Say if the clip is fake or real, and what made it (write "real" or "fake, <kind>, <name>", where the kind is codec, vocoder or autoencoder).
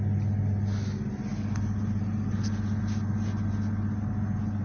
real